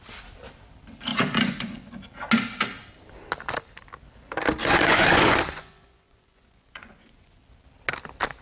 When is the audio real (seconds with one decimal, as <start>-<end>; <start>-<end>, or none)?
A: 0.0-1.1; 1.8-4.6; 7.4-8.4